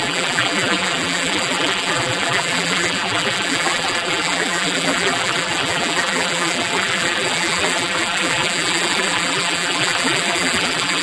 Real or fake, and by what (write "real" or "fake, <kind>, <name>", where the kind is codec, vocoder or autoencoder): fake, vocoder, BigVGAN v2